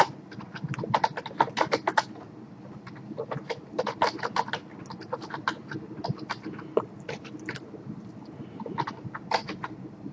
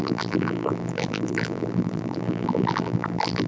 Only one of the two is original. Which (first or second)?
first